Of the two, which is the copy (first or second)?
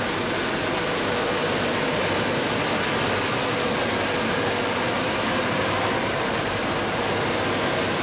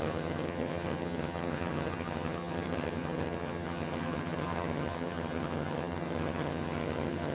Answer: second